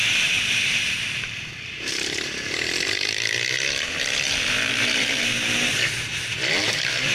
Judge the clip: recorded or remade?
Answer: remade